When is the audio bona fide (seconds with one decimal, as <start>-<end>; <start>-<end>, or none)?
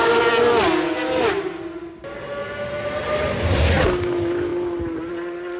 0.0-5.6